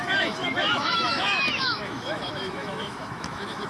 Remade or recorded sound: remade